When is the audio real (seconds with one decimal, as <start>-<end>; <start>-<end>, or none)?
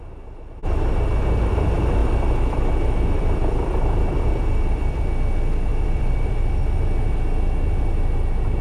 0.0-2.0; 5.0-5.7; 6.5-8.6